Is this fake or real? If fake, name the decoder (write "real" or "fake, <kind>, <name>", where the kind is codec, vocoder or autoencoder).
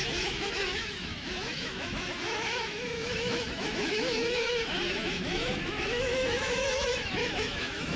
fake, autoencoder, DAC-VAE